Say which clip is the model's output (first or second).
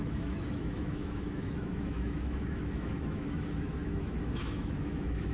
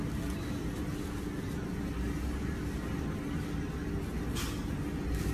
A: first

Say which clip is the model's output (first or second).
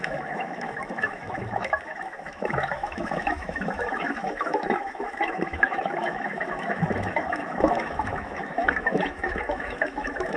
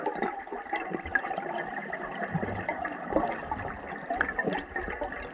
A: first